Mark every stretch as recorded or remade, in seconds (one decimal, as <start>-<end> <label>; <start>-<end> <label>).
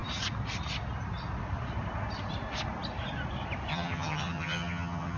0.0-3.7 recorded; 3.7-5.2 remade